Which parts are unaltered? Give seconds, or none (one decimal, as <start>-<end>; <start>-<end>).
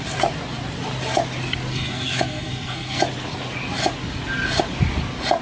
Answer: 0.0-1.7; 3.0-5.4